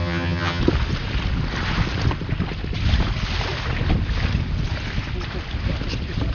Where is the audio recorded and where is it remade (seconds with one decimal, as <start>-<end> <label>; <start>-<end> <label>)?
0.0-0.6 remade; 0.6-6.3 recorded